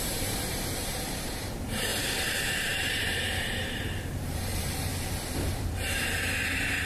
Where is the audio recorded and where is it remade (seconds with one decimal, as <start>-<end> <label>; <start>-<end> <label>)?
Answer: 0.0-4.9 remade; 4.9-5.5 recorded; 5.5-6.9 remade